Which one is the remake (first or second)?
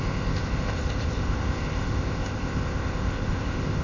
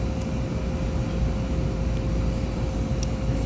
first